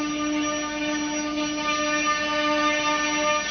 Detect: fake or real real